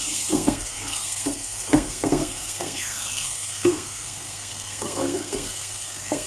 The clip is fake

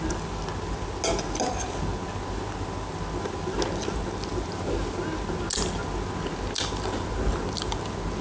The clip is real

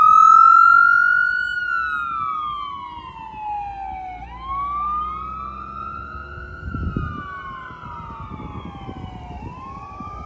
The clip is real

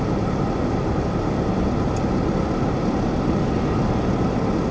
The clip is real